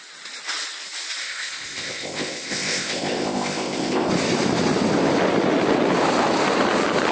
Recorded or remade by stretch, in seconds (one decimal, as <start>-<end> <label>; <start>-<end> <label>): 0.0-1.2 recorded; 1.2-4.1 remade; 4.1-7.1 recorded